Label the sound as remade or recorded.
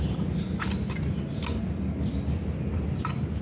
recorded